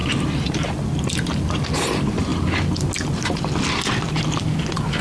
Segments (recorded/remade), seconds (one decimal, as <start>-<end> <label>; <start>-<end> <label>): 0.0-5.0 recorded